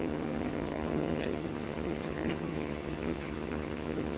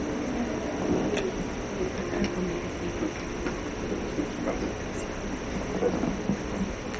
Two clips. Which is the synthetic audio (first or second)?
first